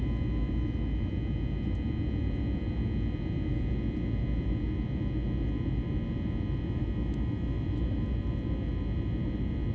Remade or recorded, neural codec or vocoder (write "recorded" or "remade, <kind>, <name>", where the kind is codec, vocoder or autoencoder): recorded